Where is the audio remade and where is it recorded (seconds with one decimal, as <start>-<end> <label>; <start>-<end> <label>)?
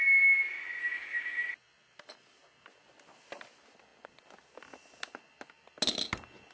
0.0-0.8 recorded; 0.8-1.5 remade; 1.5-6.5 recorded